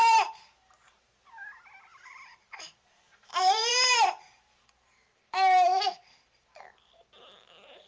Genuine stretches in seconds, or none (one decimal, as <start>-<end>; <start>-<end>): 0.7-1.9; 6.6-7.9